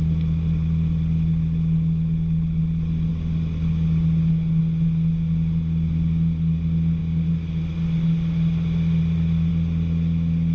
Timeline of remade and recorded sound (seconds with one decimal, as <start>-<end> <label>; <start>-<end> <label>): 0.0-10.5 recorded